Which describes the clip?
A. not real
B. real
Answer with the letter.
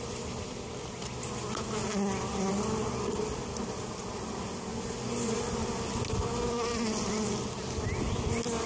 B